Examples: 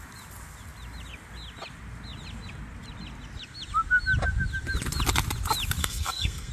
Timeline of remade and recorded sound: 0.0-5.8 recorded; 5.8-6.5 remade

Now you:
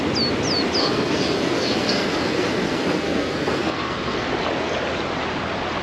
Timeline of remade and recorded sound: 0.0-0.8 recorded; 0.8-4.3 remade; 4.3-5.8 recorded

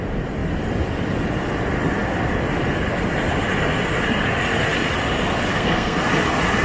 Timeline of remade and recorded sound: 0.0-5.5 recorded; 5.5-6.0 remade; 6.0-6.6 recorded